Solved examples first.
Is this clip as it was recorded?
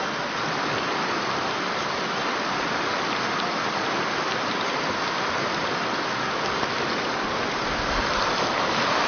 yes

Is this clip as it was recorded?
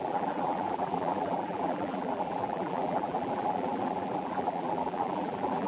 no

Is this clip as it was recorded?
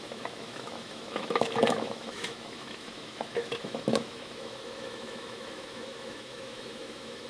no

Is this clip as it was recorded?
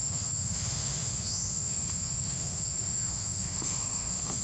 no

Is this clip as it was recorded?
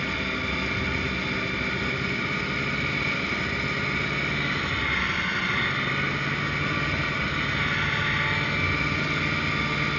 yes